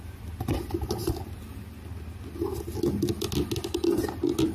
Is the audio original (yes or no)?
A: yes